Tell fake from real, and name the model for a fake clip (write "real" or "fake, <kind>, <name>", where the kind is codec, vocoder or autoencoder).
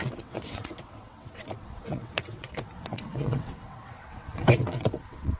fake, vocoder, WaveNeXt